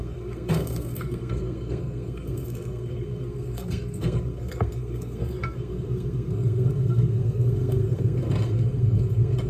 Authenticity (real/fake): fake